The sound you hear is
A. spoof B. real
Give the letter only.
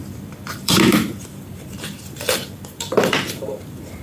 A